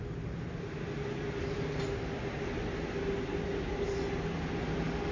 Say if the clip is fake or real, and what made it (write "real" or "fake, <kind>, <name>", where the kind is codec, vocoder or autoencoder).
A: real